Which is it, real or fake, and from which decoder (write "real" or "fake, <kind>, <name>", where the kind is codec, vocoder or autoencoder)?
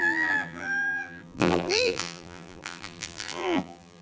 fake, vocoder, BigVGAN v2